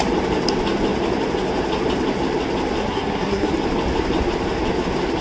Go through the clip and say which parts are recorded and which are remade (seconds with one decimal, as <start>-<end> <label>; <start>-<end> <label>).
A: 0.0-2.8 recorded; 2.8-3.5 remade; 3.5-5.2 recorded